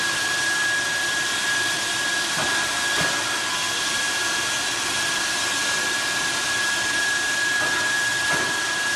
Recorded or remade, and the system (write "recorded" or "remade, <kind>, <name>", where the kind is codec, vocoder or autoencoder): remade, vocoder, BigVGAN v2